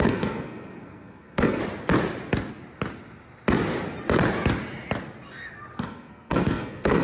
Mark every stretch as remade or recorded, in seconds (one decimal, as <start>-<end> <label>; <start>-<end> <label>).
0.0-1.6 remade; 1.6-5.8 recorded; 5.8-7.0 remade